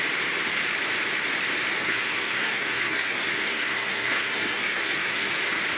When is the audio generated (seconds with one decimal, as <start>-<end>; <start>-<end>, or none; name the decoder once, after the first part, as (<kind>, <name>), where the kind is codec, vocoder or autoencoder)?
1.8-5.3 (codec, SNAC)